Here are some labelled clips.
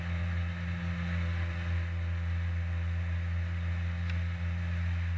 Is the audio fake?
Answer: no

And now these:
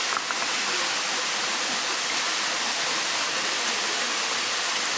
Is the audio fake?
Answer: no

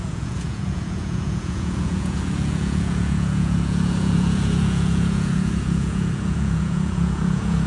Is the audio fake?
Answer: yes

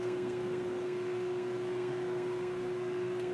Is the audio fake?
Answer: yes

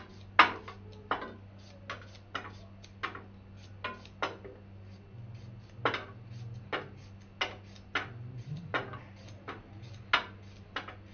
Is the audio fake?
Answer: no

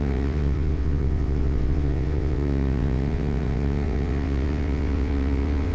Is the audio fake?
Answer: yes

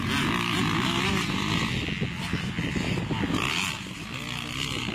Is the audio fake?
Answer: no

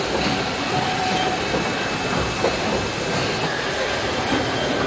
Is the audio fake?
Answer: no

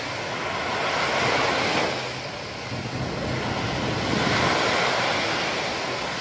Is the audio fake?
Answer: no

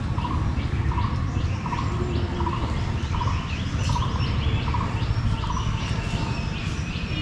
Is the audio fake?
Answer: no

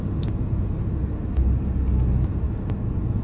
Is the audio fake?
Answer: no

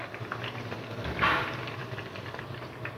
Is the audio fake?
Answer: no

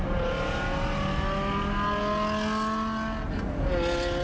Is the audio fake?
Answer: no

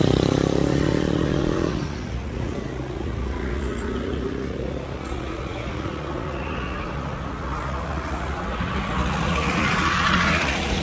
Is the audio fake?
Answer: yes